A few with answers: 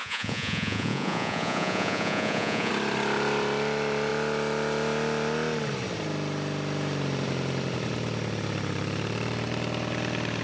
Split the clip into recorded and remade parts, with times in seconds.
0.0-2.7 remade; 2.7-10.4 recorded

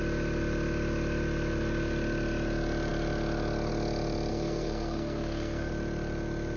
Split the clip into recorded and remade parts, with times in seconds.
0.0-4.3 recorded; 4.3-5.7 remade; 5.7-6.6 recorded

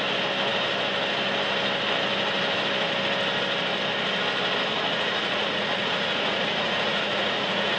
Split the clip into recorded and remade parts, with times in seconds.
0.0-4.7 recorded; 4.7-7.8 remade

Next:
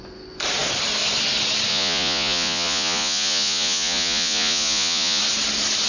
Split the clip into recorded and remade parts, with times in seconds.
0.0-1.7 recorded; 1.7-5.2 remade; 5.2-5.9 recorded